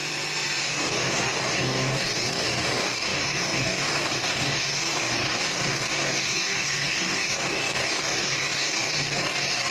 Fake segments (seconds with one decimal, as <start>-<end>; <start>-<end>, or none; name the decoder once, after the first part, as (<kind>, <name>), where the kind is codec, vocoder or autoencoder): 0.6-9.7 (codec, DAC)